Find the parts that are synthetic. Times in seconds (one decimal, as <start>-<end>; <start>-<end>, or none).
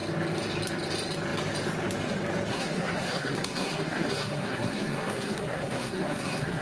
2.5-6.6